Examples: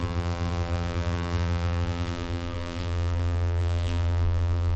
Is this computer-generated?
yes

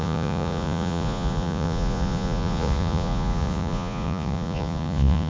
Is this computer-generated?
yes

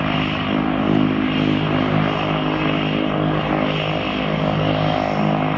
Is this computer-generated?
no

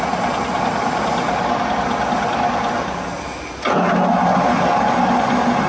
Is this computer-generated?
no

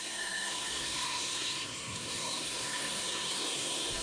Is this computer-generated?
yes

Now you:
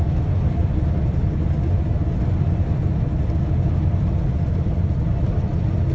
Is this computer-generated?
no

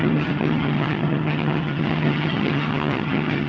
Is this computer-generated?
yes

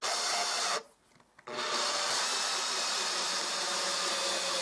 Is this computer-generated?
no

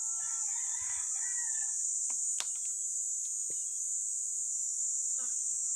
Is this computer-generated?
no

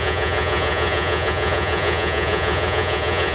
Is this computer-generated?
yes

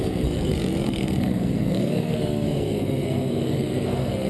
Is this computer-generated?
yes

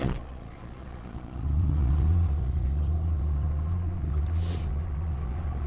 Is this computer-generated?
yes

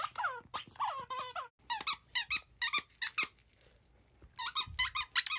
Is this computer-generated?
no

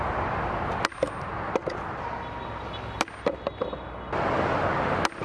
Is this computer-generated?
no